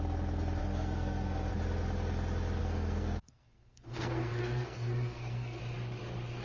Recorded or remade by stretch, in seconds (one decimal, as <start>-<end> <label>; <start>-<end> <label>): 0.0-0.6 recorded; 0.6-1.5 remade; 1.5-2.6 recorded; 2.6-5.6 remade; 5.6-6.4 recorded